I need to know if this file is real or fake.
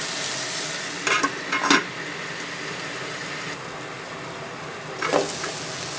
real